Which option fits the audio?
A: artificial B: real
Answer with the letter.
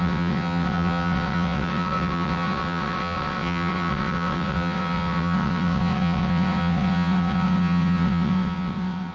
A